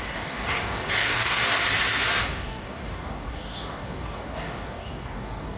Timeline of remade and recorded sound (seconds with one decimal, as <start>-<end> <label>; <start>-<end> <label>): 0.0-1.4 remade; 1.4-2.2 recorded; 2.2-5.6 remade